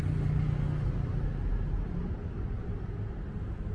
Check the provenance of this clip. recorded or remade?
recorded